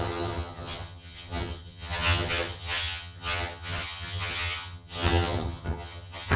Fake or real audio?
fake